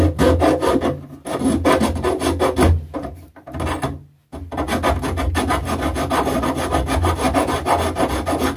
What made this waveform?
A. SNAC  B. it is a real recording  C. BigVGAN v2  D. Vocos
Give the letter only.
B